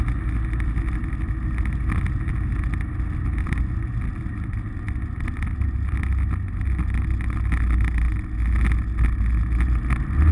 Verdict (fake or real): real